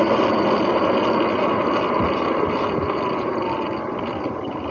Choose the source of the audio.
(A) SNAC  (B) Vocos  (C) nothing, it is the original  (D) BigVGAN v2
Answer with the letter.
C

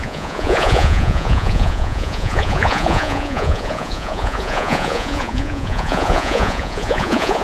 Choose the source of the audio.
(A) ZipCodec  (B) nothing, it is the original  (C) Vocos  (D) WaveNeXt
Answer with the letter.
C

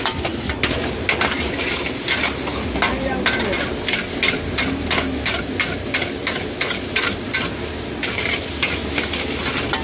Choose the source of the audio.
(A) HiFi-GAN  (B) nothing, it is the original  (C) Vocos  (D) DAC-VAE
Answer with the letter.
B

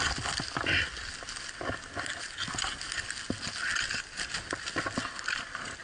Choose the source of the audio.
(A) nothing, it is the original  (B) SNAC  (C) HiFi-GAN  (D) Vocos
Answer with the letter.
A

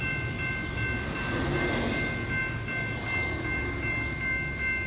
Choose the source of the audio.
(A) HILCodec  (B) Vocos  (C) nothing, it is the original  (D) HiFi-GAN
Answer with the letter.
C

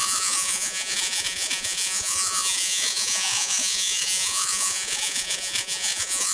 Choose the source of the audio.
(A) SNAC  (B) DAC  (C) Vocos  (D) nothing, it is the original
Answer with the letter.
C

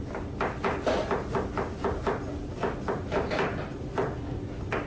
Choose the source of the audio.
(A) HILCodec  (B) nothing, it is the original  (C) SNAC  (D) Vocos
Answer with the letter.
B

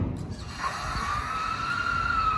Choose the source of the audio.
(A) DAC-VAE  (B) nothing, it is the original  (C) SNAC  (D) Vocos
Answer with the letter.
B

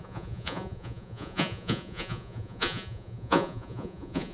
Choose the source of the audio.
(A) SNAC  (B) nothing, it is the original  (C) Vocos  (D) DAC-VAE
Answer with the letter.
C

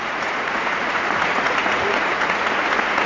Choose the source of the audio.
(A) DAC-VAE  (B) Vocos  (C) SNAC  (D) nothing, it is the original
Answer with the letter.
B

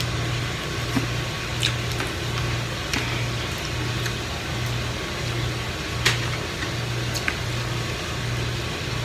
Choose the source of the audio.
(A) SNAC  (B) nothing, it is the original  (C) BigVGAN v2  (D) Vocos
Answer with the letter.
B